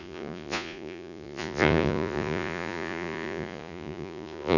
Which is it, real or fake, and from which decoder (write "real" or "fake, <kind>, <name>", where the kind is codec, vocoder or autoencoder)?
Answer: fake, vocoder, Vocos